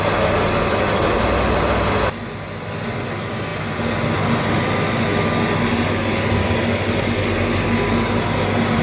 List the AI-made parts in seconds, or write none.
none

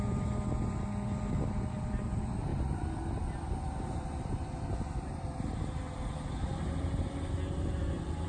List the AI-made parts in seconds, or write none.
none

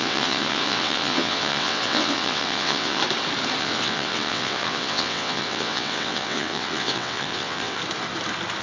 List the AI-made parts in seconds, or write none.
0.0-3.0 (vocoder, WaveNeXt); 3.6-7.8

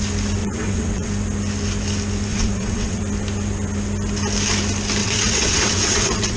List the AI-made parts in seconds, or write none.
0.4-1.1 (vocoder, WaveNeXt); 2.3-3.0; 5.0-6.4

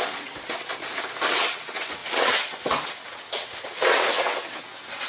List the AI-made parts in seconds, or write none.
0.0-0.7 (vocoder, WaveNeXt); 1.3-5.1

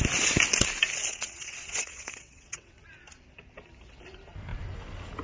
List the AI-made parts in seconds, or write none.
1.1-2.8 (vocoder, WaveNeXt)

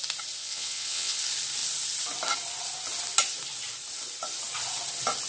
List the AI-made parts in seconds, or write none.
0.4-1.2 (vocoder, WaveNeXt)